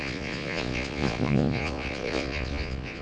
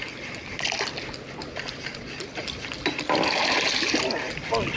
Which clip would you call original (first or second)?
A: second